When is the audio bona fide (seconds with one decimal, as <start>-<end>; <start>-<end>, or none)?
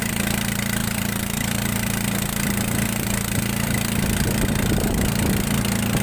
0.0-0.8; 1.7-6.0